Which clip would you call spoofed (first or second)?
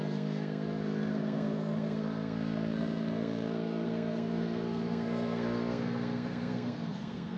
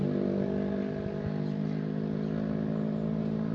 first